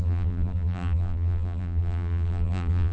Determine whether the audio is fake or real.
fake